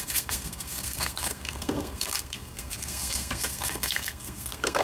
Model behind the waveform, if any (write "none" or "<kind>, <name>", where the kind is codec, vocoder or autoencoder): codec, SNAC